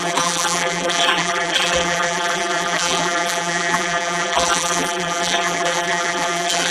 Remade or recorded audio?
remade